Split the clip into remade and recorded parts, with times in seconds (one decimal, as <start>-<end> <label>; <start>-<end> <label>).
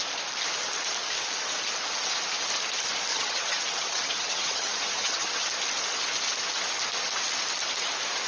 0.0-3.1 recorded; 3.1-5.4 remade; 5.4-8.3 recorded